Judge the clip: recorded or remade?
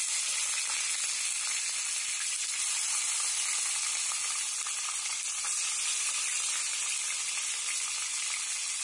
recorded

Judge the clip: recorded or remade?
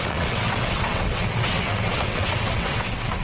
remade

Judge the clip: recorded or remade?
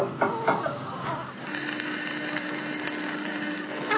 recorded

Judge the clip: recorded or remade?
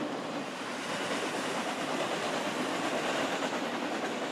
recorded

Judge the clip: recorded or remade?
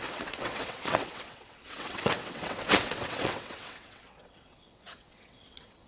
remade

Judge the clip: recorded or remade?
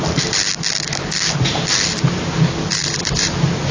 remade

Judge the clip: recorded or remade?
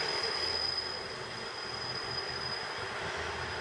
recorded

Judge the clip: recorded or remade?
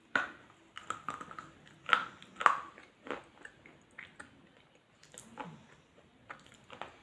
recorded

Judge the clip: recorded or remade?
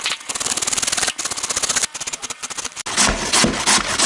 recorded